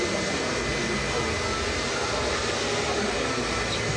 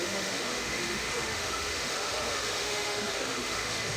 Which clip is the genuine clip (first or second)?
first